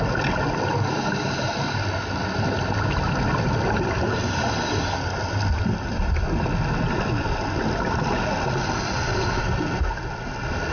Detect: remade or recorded recorded